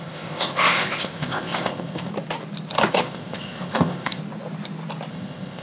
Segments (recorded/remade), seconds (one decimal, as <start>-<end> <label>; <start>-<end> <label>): 0.0-2.1 remade; 2.1-2.9 recorded; 2.9-4.2 remade; 4.2-5.1 recorded; 5.1-5.6 remade